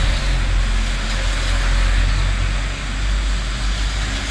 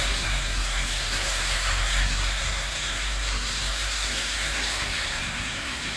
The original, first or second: first